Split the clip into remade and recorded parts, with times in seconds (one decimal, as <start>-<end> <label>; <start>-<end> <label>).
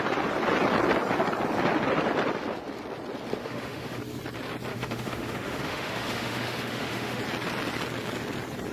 0.0-3.4 recorded; 3.4-4.0 remade; 4.0-4.7 recorded; 4.7-7.2 remade; 7.2-8.7 recorded